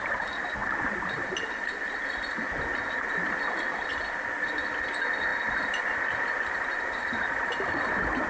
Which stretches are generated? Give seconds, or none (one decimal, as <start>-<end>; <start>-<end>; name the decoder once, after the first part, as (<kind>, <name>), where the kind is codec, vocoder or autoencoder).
0.6-3.9 (vocoder, BigVGAN v2); 5.3-8.3